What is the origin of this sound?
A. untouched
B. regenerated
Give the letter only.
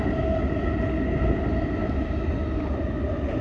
A